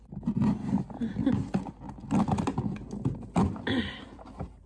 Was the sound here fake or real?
real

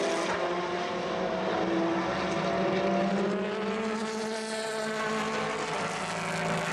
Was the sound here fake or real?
real